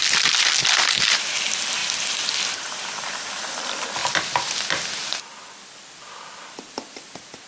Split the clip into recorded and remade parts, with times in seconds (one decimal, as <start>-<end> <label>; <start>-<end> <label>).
0.0-4.0 remade; 4.0-5.6 recorded; 5.6-7.5 remade